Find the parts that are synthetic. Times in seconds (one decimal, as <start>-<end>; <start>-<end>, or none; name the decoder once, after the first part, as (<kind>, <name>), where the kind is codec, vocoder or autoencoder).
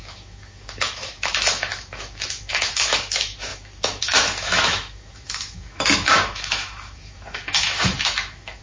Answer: 0.0-8.6 (autoencoder, DAC-VAE)